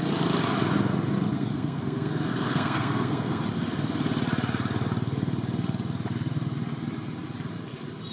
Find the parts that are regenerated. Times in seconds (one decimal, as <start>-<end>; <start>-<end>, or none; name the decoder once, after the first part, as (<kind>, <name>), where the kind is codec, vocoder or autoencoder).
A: 1.3-3.4 (codec, SNAC)